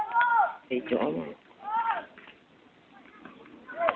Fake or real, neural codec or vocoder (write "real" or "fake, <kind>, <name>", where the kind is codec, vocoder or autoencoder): real